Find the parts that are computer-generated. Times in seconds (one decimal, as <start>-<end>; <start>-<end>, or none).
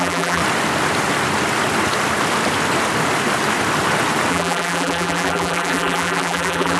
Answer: 0.0-0.4; 4.3-6.8